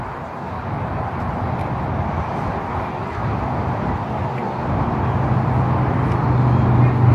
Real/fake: real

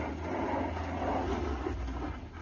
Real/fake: real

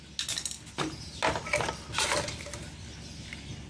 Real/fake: real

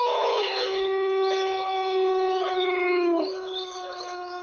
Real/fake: fake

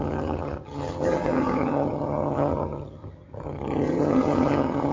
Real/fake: fake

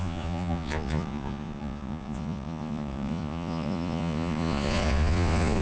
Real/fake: fake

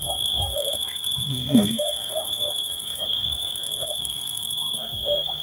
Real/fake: fake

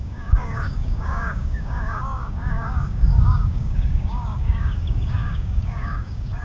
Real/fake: fake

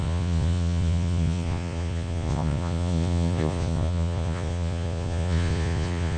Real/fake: fake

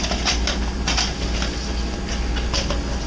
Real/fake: real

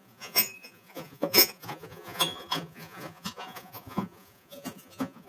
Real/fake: fake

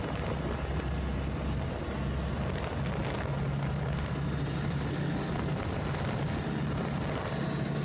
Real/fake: real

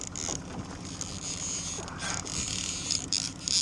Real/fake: fake